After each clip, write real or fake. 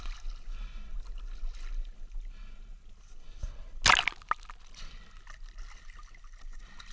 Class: real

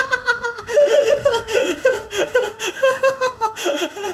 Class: fake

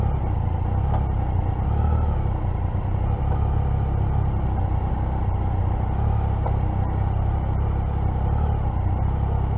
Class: real